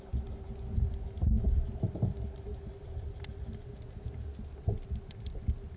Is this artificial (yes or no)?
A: no